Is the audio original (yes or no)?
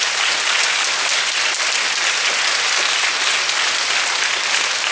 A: yes